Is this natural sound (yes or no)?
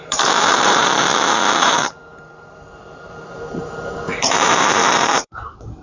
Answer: no